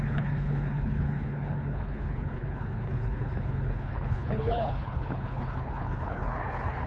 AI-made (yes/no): yes